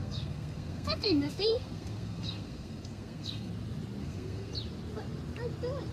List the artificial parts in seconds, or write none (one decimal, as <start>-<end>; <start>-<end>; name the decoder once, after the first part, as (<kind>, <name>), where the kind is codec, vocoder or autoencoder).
0.0-3.5 (codec, SNAC); 4.0-4.5

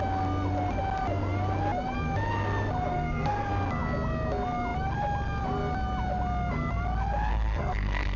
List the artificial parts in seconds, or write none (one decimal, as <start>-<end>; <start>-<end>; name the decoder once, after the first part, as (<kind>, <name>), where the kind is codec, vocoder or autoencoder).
2.9-3.5 (codec, SNAC); 7.3-8.2

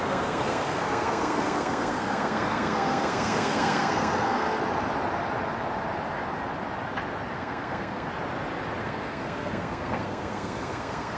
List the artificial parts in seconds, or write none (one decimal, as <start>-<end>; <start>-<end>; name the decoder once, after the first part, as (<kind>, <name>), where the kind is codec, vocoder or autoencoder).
0.0-4.6 (codec, SNAC); 7.3-8.1; 8.8-11.2